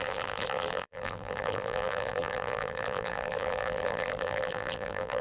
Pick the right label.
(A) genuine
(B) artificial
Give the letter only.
B